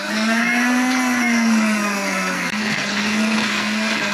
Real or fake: fake